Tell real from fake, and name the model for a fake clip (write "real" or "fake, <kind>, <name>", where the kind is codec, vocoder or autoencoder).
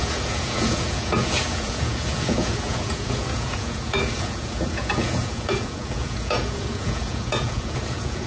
fake, vocoder, Vocos